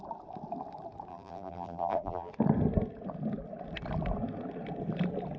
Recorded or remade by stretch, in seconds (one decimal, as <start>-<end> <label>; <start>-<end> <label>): 0.0-1.1 recorded; 1.1-2.3 remade; 2.3-5.4 recorded